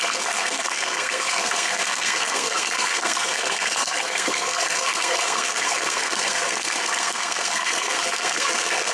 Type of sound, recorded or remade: remade